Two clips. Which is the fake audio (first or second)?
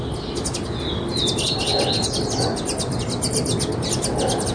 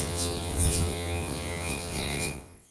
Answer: second